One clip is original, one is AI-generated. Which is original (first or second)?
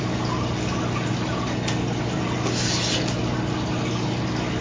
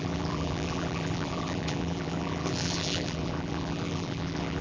first